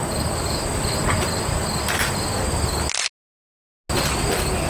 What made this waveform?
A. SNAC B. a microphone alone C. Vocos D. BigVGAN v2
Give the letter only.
B